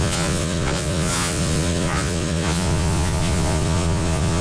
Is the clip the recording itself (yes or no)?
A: no